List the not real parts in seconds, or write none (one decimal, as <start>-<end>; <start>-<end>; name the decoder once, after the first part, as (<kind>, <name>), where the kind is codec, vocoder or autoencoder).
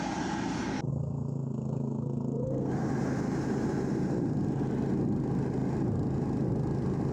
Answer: 0.9-2.7 (codec, SNAC)